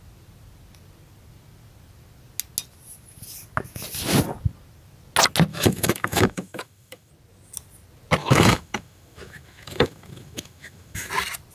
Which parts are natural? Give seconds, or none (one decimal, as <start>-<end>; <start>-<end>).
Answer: 0.0-5.5; 7.1-8.2; 11.1-11.5